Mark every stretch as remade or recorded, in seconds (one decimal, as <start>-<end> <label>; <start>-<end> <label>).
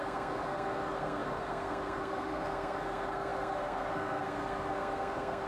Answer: 0.0-5.5 remade